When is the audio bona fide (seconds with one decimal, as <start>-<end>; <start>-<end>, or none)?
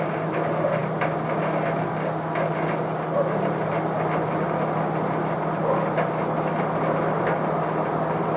0.0-8.4